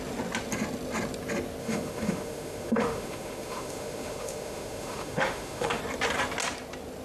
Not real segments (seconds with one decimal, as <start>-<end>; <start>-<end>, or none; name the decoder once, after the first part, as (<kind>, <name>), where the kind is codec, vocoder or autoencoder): 1.6-5.8 (autoencoder, DAC-VAE)